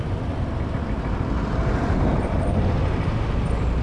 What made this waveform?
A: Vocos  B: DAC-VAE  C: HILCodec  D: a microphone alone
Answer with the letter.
D